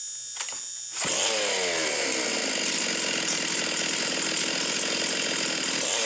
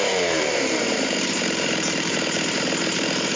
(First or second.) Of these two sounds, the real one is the first